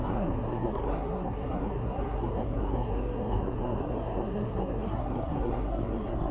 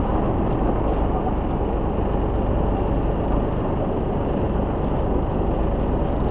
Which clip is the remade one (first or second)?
first